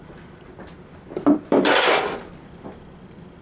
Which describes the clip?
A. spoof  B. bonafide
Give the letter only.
A